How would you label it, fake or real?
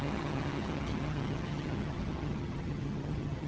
fake